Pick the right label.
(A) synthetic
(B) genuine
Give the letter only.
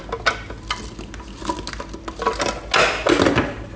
B